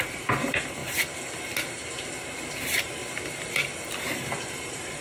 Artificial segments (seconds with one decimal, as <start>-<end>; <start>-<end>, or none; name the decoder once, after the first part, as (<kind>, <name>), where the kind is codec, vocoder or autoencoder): 0.0-0.8 (vocoder, BigVGAN v2); 2.6-3.0; 4.5-5.0